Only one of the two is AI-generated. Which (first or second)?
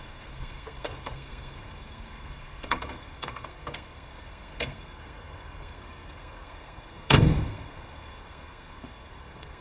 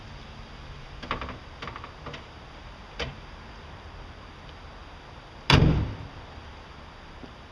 first